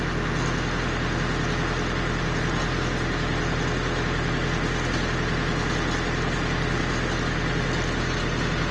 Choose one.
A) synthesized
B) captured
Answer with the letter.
B